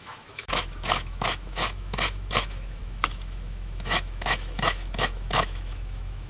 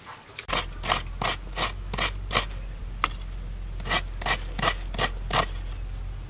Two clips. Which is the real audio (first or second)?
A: second